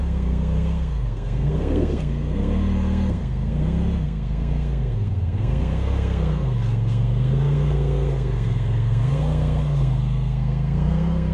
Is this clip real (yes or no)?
no